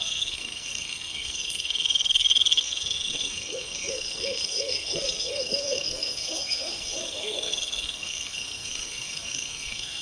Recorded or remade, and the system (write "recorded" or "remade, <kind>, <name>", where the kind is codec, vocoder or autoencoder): remade, codec, SNAC